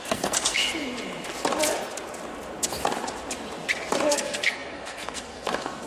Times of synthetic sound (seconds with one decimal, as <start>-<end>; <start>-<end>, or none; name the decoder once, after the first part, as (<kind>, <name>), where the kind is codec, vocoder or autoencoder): 0.0-0.6 (codec, SNAC); 4.1-5.9